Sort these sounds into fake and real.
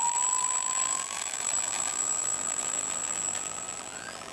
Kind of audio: fake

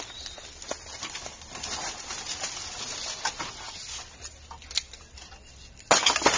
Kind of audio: real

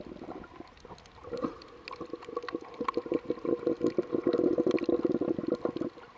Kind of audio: real